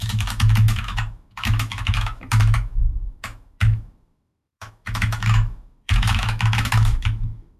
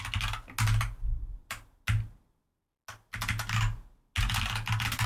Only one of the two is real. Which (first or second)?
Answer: second